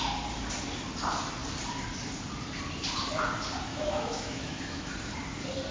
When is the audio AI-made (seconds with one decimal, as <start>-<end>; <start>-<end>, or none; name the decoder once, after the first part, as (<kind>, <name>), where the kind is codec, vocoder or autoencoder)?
3.7-4.9 (autoencoder, DAC-VAE)